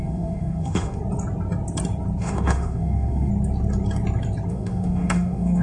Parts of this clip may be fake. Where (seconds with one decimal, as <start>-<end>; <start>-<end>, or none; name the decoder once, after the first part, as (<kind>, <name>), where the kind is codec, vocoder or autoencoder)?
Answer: 0.0-1.0 (autoencoder, DAC-VAE); 2.2-3.3; 4.5-5.6